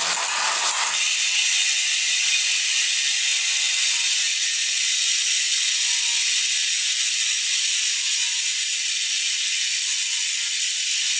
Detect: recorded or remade recorded